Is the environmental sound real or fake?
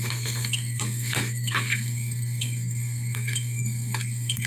fake